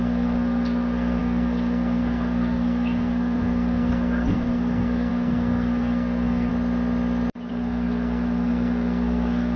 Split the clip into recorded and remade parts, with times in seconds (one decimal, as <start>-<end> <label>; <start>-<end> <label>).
0.0-6.5 remade; 6.5-7.5 recorded; 7.5-9.6 remade